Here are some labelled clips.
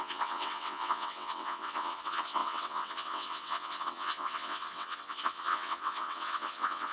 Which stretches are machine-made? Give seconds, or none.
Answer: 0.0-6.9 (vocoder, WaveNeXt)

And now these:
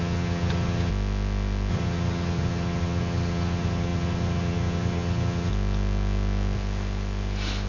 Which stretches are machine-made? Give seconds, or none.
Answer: 0.0-0.9 (vocoder, HiFi-GAN); 1.7-5.5

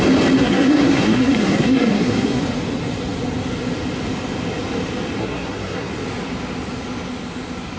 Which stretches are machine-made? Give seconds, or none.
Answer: 0.4-2.4 (codec, SNAC); 5.2-5.9

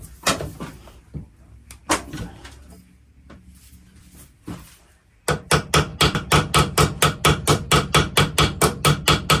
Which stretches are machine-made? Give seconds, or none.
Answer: none

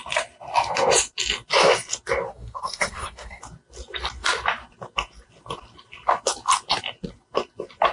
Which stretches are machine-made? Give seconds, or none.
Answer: 2.3-3.4 (codec, SNAC)

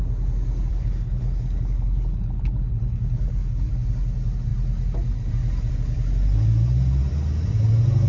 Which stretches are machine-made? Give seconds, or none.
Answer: 0.7-3.7 (codec, HILCodec)

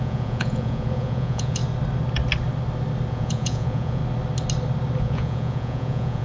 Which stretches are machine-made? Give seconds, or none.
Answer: 0.0-1.6 (vocoder, Vocos); 3.1-4.0; 5.0-6.2